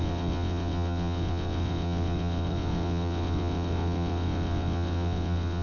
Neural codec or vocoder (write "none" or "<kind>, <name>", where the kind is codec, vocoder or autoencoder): vocoder, WaveNeXt